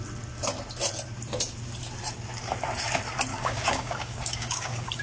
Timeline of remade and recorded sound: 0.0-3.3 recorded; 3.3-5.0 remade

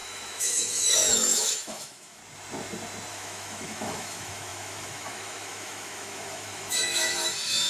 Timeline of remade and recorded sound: 0.0-2.2 remade; 2.2-3.1 recorded; 3.1-7.7 remade

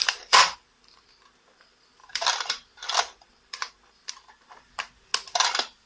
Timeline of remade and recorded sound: 0.0-5.1 remade; 5.1-5.9 recorded

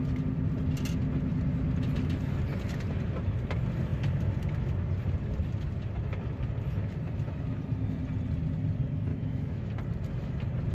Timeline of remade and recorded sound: 0.0-9.1 recorded; 9.1-9.7 remade; 9.7-10.7 recorded

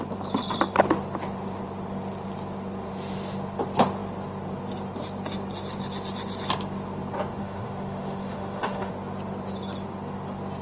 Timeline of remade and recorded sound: 0.0-7.4 recorded; 7.4-8.9 remade; 8.9-10.6 recorded

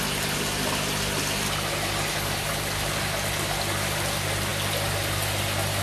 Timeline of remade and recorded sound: 0.0-5.8 recorded

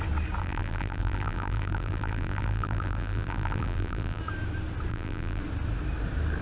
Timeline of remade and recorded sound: 0.0-0.4 recorded; 0.4-4.2 remade; 4.2-4.9 recorded; 4.9-5.4 remade; 5.4-6.4 recorded